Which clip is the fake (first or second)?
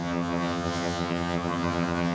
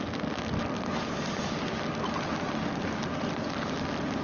first